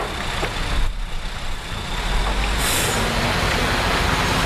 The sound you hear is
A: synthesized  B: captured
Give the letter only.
B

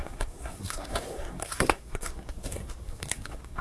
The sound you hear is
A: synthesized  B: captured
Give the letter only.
A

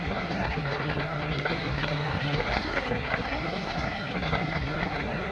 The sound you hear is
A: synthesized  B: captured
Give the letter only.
A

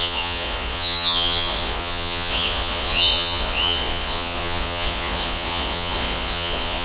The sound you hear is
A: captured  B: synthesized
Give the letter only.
B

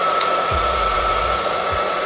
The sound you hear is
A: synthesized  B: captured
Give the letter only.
A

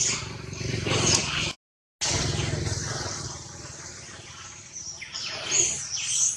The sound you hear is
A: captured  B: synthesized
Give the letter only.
A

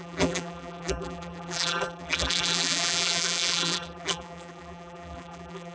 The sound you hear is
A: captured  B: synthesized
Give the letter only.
B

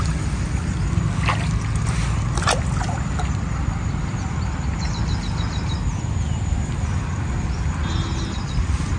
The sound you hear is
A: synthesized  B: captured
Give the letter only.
B